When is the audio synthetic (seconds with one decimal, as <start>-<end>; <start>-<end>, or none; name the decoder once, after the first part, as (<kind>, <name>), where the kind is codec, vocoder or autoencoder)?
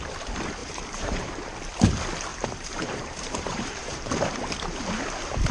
0.6-1.3 (vocoder, BigVGAN v2); 2.3-4.1